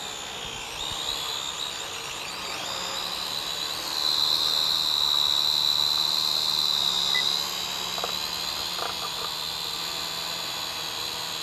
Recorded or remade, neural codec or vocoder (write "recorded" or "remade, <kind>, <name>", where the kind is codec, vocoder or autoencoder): recorded